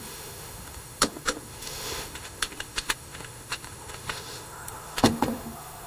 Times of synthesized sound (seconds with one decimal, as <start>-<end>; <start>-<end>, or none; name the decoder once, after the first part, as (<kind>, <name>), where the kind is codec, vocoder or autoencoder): 0.0-5.9 (autoencoder, DAC-VAE)